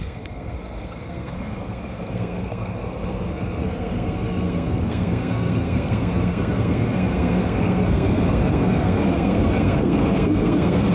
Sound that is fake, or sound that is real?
fake